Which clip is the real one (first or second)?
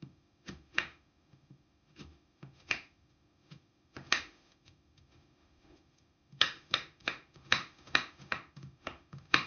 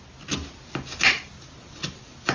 second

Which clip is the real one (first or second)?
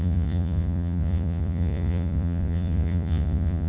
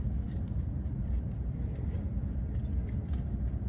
second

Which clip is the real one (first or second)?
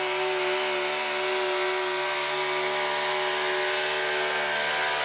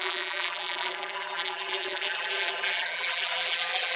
first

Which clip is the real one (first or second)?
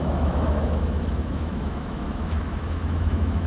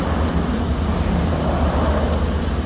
second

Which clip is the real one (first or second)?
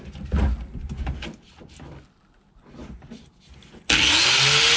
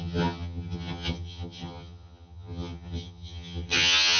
first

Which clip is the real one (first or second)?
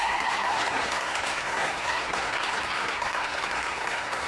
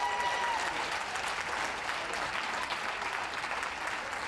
second